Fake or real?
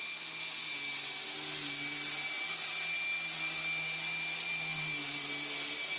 real